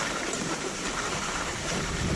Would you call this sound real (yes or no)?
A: yes